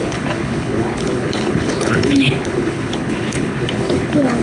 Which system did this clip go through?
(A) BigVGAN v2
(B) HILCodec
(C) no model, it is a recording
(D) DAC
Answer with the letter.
B